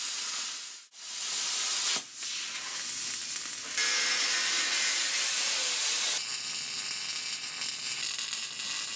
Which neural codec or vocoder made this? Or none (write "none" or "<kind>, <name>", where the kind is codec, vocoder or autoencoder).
none